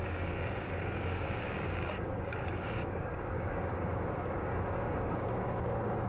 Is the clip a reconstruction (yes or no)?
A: yes